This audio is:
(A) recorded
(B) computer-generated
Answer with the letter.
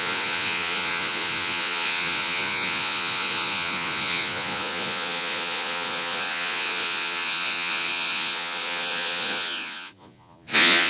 B